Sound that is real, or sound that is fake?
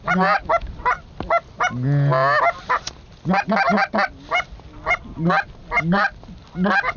real